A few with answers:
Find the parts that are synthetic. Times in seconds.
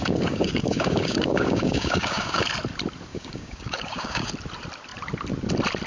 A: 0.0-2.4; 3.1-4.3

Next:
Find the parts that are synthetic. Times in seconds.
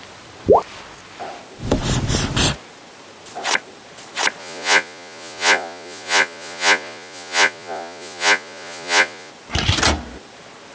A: 4.4-9.3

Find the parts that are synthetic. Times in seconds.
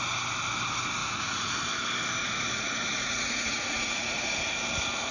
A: 1.0-1.6; 2.2-4.4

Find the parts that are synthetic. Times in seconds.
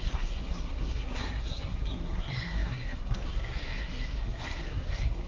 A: 0.0-5.3